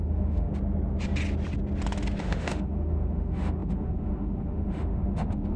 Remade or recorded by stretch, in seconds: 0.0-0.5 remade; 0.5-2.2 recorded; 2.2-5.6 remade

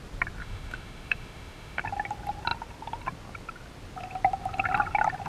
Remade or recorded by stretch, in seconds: 0.0-0.4 recorded; 0.4-1.8 remade; 1.8-5.3 recorded

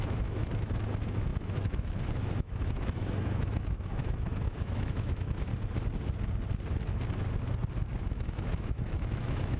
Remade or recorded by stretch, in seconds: 0.0-5.5 remade; 5.5-8.0 recorded; 8.0-9.6 remade

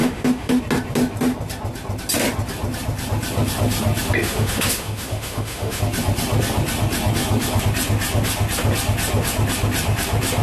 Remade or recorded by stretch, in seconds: 0.0-0.6 remade; 0.6-4.2 recorded; 4.2-5.8 remade; 5.8-10.4 recorded

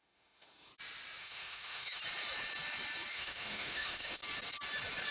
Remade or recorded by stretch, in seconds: 0.0-0.7 remade; 0.7-1.2 recorded; 1.2-2.0 remade; 2.0-3.1 recorded; 3.1-4.2 remade; 4.2-5.1 recorded

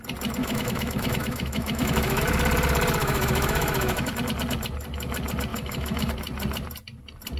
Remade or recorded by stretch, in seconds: 0.0-0.4 recorded; 0.4-2.2 remade; 2.2-3.0 recorded; 3.0-4.1 remade; 4.1-5.5 recorded; 5.5-6.1 remade; 6.1-7.4 recorded

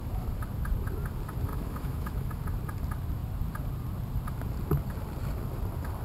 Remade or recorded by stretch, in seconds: 0.0-1.5 recorded; 1.5-2.4 remade; 2.4-6.0 recorded

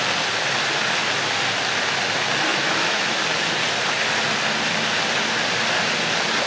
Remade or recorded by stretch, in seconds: 0.0-2.5 recorded; 2.5-3.2 remade; 3.2-6.5 recorded